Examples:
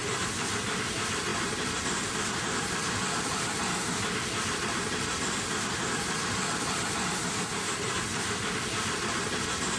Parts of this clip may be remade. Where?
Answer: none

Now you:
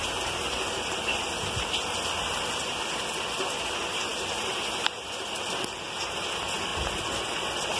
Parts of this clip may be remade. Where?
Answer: 4.1-5.5; 6.7-7.8

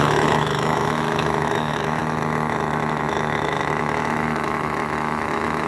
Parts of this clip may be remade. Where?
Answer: 0.0-5.7

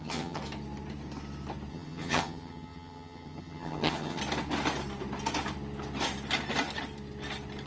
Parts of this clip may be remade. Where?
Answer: 0.0-0.4; 1.7-4.2